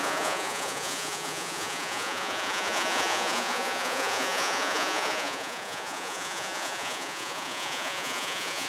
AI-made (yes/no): yes